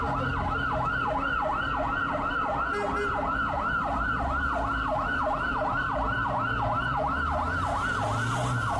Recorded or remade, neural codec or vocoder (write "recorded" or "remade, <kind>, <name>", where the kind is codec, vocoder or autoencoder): recorded